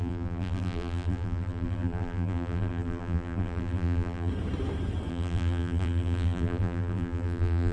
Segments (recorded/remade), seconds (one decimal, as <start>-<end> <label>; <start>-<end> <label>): 0.0-4.3 remade; 4.3-5.1 recorded; 5.1-7.7 remade